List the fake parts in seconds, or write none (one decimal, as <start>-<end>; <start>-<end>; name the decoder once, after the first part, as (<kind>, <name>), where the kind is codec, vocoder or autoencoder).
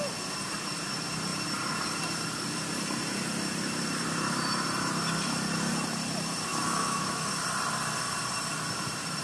6.5-7.3 (autoencoder, DAC-VAE)